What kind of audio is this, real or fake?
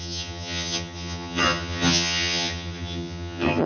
fake